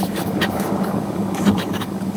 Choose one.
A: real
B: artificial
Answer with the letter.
B